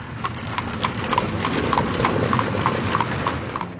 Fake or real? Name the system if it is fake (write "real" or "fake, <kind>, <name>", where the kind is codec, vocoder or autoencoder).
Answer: real